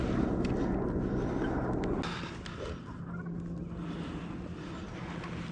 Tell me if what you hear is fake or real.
real